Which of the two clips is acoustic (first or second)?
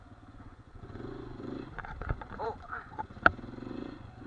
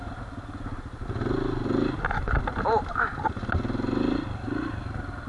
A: second